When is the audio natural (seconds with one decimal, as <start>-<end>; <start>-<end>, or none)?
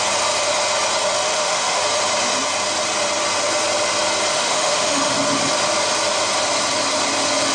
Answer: 0.0-1.3; 1.8-4.3; 5.1-7.5